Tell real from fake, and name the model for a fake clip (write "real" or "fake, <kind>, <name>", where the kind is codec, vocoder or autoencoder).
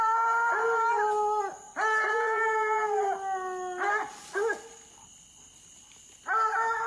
real